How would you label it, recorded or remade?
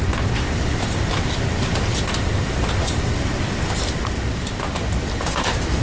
remade